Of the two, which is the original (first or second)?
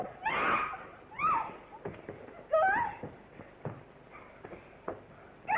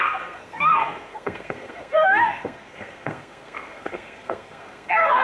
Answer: first